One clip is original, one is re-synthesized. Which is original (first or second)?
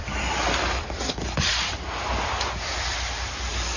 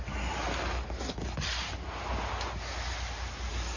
second